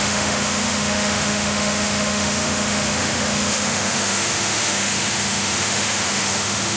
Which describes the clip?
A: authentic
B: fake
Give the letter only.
B